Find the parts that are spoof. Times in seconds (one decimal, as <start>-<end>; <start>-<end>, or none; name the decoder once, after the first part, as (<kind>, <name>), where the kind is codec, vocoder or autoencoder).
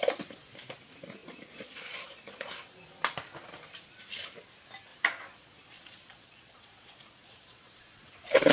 1.2-2.5 (vocoder, Vocos); 4.9-8.1